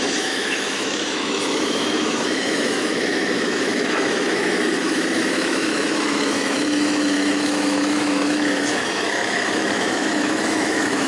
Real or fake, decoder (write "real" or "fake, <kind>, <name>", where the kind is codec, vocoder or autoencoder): fake, autoencoder, DAC-VAE